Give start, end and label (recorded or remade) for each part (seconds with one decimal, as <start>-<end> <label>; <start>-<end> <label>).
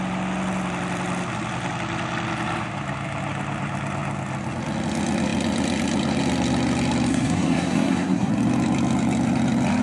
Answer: 0.0-7.1 recorded; 7.1-8.3 remade; 8.3-9.8 recorded